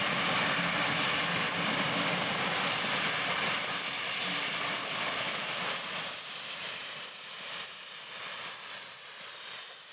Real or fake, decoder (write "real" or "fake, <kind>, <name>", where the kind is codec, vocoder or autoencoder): real